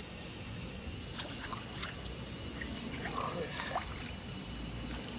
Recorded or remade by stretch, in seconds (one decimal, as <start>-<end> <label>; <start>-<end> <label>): 0.0-3.1 remade; 3.1-5.2 recorded